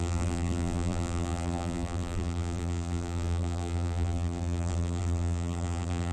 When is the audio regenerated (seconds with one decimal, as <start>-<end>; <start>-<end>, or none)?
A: 0.0-6.1